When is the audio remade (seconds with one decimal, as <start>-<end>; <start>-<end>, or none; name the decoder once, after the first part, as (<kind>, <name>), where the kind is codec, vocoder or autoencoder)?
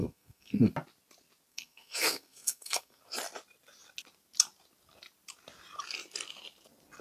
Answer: 0.0-0.7 (codec, SNAC); 1.5-3.0